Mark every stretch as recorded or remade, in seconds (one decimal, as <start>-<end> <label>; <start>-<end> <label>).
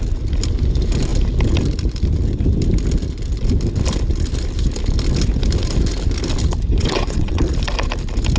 0.0-6.8 recorded; 6.8-7.4 remade; 7.4-8.4 recorded